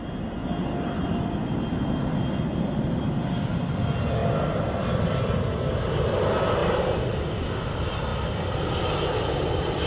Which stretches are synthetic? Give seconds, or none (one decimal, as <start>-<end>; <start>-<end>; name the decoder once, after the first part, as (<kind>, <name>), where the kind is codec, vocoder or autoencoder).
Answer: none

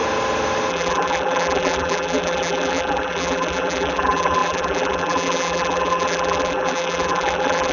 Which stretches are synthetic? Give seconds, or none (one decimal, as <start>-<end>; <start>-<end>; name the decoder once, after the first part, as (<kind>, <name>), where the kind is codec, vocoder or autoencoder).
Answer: 0.7-7.7 (vocoder, BigVGAN v2)

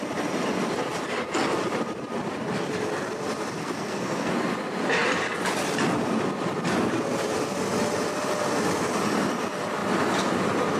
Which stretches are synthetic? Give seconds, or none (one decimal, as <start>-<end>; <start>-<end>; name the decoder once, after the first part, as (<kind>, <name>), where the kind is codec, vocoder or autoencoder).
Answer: 3.6-4.3 (codec, SNAC)